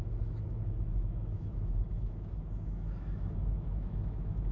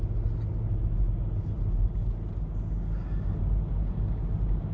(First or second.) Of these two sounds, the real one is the second